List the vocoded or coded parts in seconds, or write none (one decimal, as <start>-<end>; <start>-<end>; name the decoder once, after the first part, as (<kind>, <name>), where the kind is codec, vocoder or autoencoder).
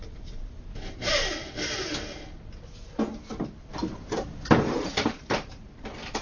0.0-1.1 (vocoder, BigVGAN v2); 3.1-6.2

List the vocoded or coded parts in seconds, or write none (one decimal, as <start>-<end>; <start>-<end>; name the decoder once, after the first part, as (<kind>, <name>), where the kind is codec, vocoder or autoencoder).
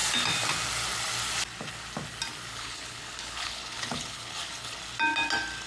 2.5-4.8 (codec, HILCodec)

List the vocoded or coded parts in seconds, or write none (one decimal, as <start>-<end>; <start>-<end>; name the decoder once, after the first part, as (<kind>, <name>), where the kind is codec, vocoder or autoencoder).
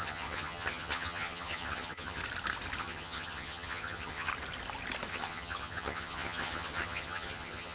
0.0-2.2 (vocoder, HiFi-GAN); 2.8-4.3; 5.1-7.7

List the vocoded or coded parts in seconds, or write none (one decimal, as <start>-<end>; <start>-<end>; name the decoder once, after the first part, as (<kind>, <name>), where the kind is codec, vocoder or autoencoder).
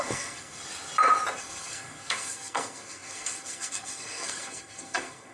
0.0-0.6 (codec, SNAC); 1.4-5.3